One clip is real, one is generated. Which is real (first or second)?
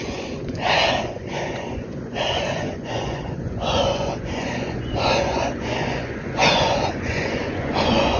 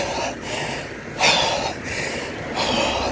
second